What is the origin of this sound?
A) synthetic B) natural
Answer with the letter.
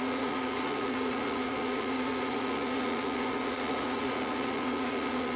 A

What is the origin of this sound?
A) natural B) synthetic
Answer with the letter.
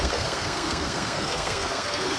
B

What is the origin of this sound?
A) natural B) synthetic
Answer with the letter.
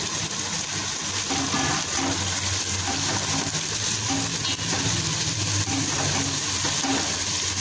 A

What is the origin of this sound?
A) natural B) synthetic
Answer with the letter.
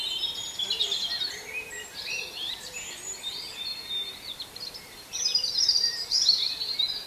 B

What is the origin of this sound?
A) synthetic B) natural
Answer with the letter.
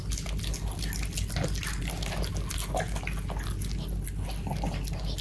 B